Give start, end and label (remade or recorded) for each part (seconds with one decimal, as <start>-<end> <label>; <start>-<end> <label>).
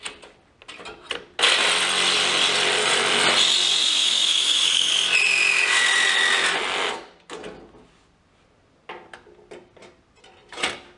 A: 0.0-3.8 recorded; 3.8-4.9 remade; 4.9-11.0 recorded